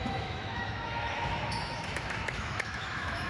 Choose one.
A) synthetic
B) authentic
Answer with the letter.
A